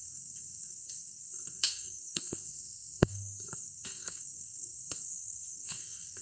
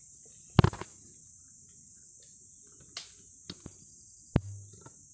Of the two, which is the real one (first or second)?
second